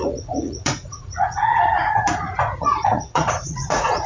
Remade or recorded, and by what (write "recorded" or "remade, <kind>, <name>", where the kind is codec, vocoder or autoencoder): remade, vocoder, Vocos